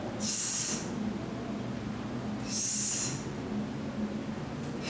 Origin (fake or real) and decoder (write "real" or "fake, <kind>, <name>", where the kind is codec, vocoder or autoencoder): real